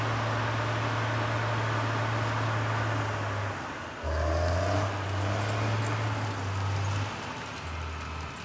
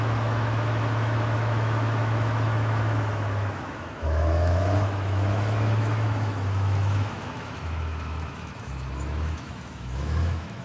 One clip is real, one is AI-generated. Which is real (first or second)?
first